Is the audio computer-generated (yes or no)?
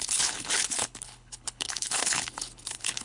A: yes